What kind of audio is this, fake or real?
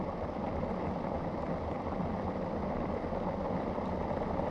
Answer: real